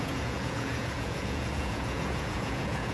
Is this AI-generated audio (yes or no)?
yes